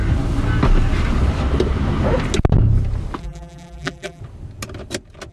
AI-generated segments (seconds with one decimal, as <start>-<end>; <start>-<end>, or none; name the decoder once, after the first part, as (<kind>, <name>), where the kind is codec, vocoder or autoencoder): 3.2-4.2 (vocoder, BigVGAN v2)